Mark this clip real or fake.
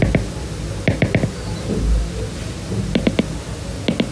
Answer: real